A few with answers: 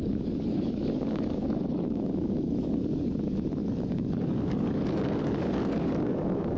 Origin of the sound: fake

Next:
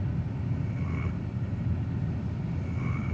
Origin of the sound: real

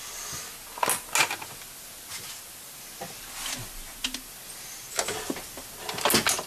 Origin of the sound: real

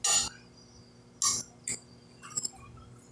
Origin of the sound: real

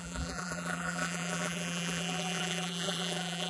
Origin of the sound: fake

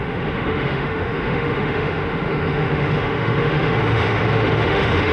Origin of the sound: fake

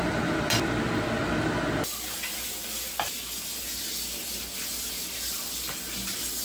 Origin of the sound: real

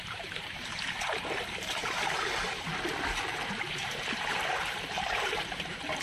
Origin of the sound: fake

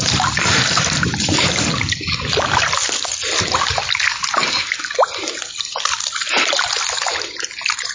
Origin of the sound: real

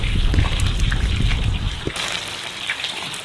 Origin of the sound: real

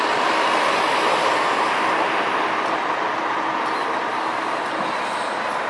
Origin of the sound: real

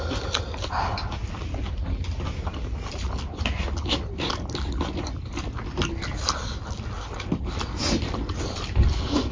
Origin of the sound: real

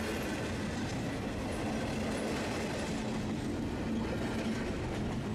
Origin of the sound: real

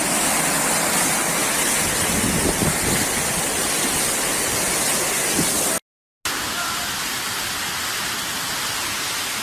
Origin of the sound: real